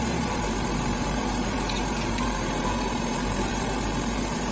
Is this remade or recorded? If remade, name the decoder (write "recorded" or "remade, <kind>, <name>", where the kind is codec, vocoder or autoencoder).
remade, vocoder, BigVGAN v2